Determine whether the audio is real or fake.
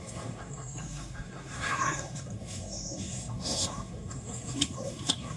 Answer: fake